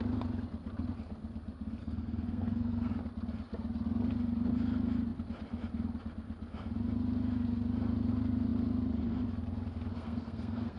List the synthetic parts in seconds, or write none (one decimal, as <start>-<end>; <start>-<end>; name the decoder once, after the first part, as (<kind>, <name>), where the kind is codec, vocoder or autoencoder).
1.8-2.9 (codec, SNAC); 9.9-10.8